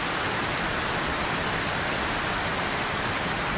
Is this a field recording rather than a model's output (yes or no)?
yes